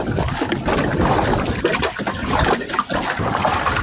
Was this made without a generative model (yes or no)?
yes